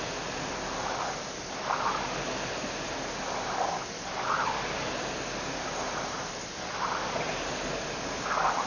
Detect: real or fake real